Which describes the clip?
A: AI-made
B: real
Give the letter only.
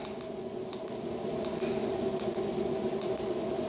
B